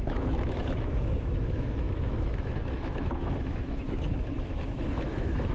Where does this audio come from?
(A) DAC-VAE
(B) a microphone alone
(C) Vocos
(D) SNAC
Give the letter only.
A